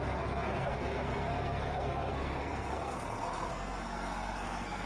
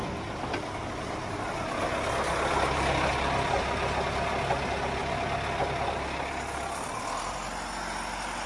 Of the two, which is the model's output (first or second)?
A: first